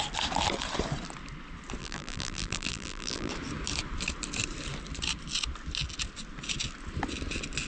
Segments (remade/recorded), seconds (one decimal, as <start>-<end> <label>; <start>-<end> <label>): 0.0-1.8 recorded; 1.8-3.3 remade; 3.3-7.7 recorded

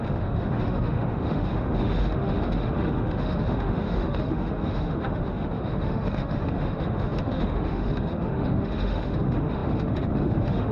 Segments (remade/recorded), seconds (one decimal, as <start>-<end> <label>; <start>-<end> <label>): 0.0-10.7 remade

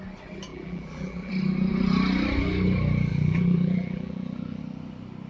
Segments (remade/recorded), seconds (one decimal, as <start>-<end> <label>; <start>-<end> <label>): 0.0-0.5 recorded; 0.5-1.3 remade; 1.3-3.1 recorded; 3.1-4.6 remade; 4.6-5.3 recorded

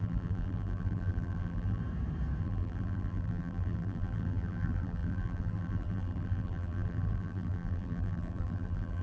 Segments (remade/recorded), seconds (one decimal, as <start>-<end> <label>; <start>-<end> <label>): 0.0-1.8 remade; 1.8-2.4 recorded; 2.4-9.0 remade